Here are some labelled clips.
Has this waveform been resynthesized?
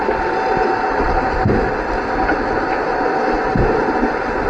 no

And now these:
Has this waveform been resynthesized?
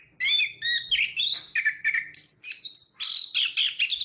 no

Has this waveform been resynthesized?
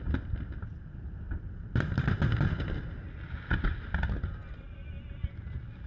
no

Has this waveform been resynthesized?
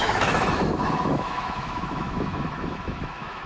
yes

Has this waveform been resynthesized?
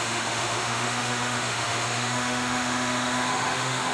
yes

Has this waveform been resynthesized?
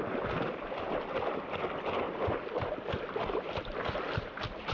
no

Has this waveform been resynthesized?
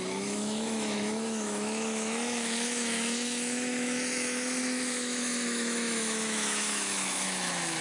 yes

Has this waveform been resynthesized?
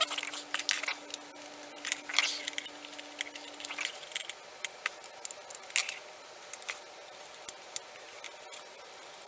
no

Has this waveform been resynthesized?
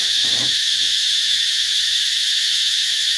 yes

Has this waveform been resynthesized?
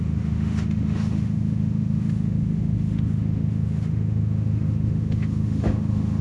yes